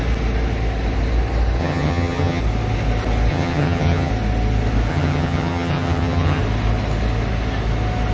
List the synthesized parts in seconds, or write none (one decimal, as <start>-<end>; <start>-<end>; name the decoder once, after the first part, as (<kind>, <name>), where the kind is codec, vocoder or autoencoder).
1.6-2.4 (vocoder, HiFi-GAN); 3.3-4.1; 4.9-6.4